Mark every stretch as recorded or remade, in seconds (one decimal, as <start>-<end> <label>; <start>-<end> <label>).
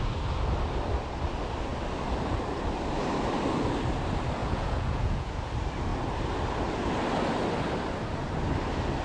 0.0-4.4 recorded; 4.4-5.4 remade; 5.4-9.0 recorded